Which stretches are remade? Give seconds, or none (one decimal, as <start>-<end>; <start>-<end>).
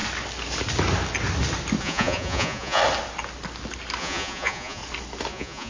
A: 1.8-2.8; 4.0-4.8; 5.3-5.7